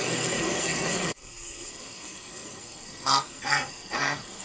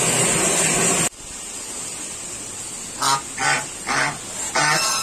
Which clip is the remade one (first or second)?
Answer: first